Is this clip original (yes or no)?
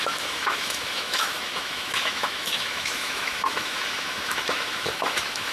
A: no